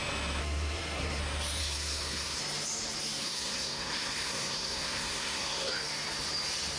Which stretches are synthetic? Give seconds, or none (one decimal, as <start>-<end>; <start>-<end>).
0.4-1.2; 1.6-2.4; 3.2-5.7